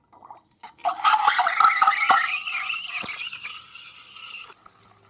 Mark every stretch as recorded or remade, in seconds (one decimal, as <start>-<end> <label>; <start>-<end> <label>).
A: 0.0-5.1 recorded